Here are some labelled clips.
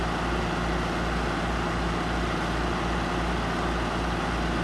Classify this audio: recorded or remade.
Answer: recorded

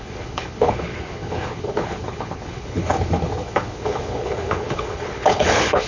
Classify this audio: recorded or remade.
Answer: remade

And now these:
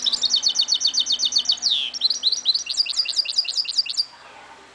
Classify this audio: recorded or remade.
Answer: recorded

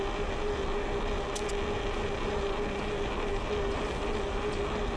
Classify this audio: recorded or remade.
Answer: recorded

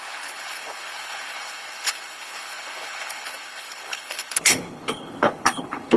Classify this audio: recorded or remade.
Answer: remade